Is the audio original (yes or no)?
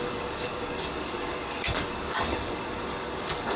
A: no